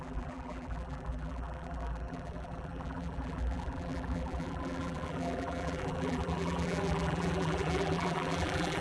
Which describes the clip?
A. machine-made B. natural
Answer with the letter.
A